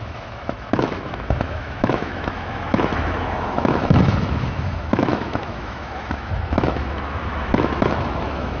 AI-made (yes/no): yes